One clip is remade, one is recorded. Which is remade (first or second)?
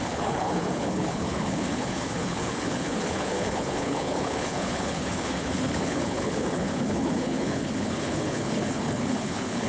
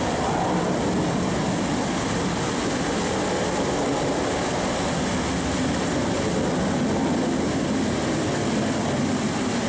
first